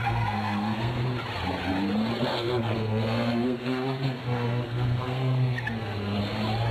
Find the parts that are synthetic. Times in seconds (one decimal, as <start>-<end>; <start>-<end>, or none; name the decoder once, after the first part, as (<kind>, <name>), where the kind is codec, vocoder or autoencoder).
0.0-1.0 (codec, SNAC); 2.3-6.2